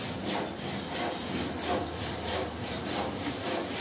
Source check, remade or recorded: recorded